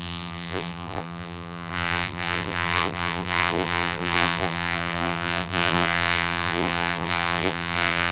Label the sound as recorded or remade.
remade